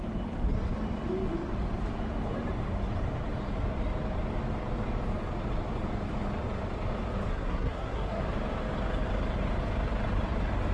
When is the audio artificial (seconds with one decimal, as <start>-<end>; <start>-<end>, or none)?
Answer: 7.3-8.2